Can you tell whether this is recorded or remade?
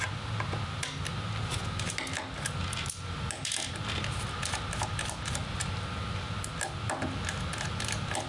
recorded